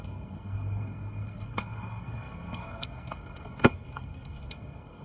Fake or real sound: fake